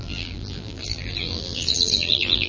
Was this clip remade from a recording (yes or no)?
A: yes